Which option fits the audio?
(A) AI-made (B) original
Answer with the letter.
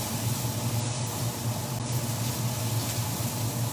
B